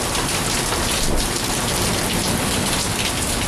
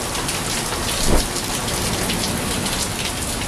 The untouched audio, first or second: second